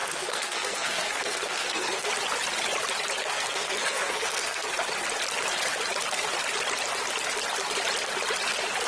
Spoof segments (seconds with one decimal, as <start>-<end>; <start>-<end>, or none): 0.0-2.1; 3.2-4.7